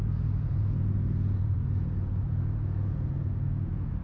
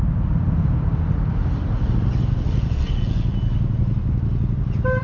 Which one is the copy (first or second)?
first